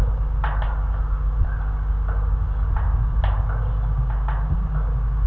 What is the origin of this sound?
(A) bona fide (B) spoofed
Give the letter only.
A